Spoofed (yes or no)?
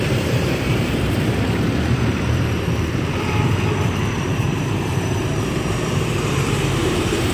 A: yes